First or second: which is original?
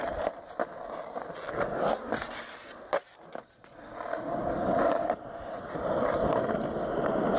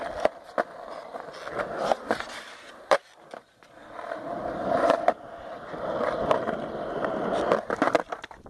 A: first